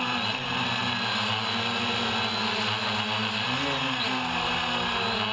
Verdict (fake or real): real